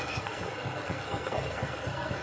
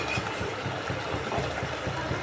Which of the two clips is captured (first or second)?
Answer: second